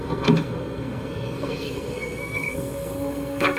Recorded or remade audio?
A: remade